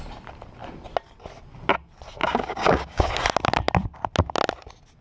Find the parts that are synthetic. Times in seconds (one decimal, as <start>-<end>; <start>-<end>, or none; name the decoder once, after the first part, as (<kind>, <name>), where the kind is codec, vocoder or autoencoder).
2.2-3.1 (codec, DAC)